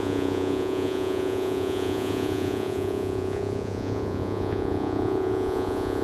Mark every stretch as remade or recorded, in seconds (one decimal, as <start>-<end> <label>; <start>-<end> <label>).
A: 0.0-6.0 remade